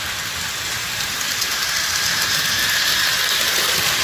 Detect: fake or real real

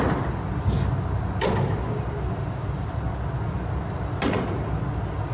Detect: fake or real real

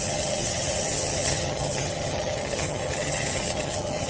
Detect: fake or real fake